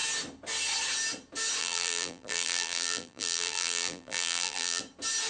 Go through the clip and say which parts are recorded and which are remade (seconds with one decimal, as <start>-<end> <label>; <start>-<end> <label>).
0.0-1.6 recorded; 1.6-4.8 remade; 4.8-5.3 recorded